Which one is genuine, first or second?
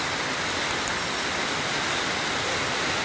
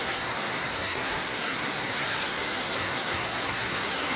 first